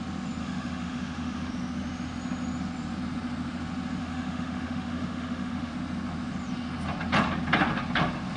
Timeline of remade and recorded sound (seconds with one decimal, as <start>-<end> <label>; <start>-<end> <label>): 0.0-0.4 recorded; 0.4-1.5 remade; 1.5-4.0 recorded; 4.0-5.7 remade; 5.7-8.4 recorded

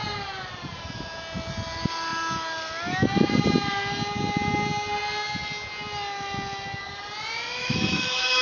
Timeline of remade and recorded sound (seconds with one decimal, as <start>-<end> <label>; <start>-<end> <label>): 0.0-7.6 recorded; 7.6-8.4 remade

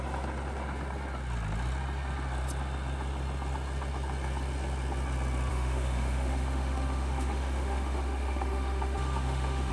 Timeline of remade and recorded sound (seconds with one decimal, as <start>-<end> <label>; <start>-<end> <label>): 0.0-5.5 recorded; 5.5-9.7 remade